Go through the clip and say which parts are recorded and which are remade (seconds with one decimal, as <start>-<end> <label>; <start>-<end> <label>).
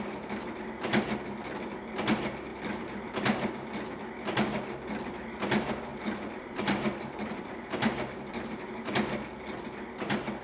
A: 0.0-2.5 recorded; 2.5-3.5 remade; 3.5-5.9 recorded; 5.9-8.9 remade; 8.9-10.4 recorded